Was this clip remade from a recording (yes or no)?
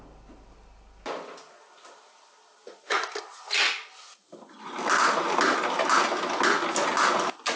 no